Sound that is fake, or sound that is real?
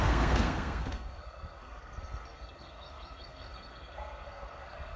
fake